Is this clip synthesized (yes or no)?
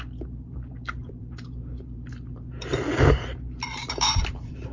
yes